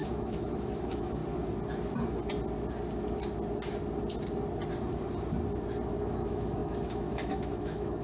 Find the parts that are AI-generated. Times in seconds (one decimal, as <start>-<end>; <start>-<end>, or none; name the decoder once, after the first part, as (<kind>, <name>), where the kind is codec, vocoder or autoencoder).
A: 0.0-1.2 (autoencoder, DAC-VAE); 6.0-8.0